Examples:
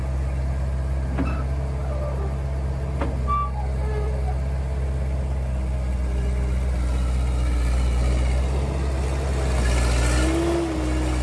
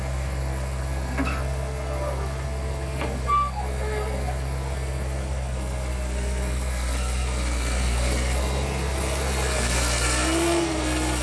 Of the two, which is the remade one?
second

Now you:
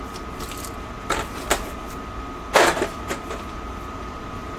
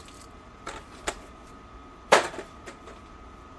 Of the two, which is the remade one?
second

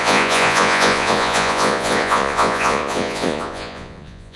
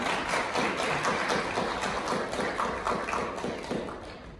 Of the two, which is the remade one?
first